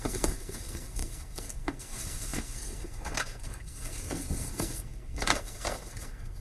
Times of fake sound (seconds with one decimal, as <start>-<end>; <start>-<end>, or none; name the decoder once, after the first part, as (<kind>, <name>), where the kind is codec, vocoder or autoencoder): 0.0-6.4 (codec, SNAC)